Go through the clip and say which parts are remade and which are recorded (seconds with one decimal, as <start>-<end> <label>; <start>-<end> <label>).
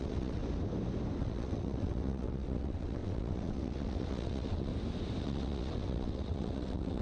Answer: 0.0-0.4 remade; 0.4-1.2 recorded; 1.2-4.7 remade; 4.7-5.2 recorded; 5.2-7.0 remade